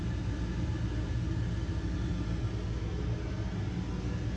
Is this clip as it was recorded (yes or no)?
yes